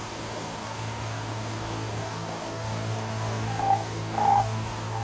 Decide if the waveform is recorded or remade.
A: remade